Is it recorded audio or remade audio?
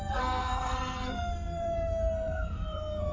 remade